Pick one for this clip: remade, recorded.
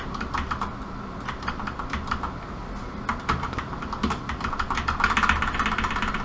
recorded